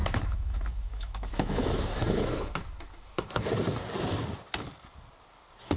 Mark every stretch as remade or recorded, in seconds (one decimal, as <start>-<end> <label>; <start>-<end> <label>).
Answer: 0.0-3.5 remade; 3.5-5.8 recorded